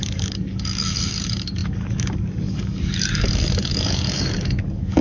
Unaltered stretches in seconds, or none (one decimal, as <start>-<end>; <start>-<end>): none